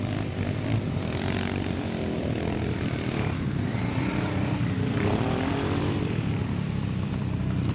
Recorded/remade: remade